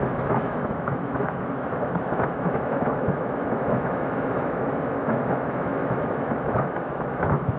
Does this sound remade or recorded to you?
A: remade